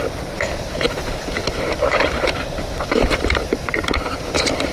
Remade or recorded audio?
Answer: remade